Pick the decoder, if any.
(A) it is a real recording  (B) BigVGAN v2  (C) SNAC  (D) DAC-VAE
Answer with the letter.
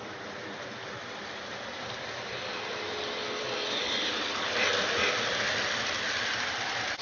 B